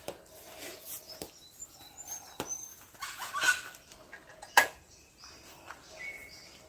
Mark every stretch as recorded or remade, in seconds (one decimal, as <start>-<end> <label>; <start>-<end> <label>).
0.0-0.7 recorded; 0.7-1.2 remade; 1.2-2.7 recorded; 2.7-3.3 remade; 3.3-4.3 recorded; 4.3-5.1 remade; 5.1-6.7 recorded